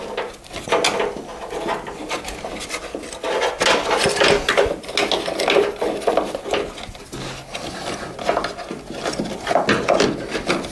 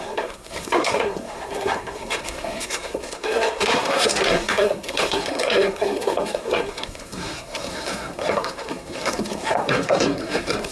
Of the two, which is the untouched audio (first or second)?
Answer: first